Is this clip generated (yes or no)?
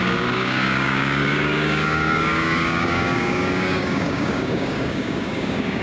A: yes